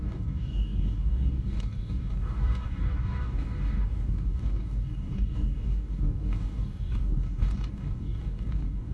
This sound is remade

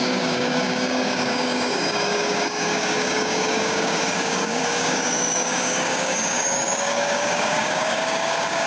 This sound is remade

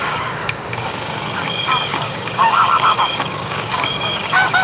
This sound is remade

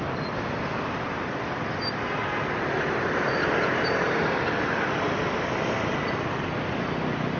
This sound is recorded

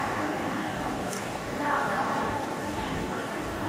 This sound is remade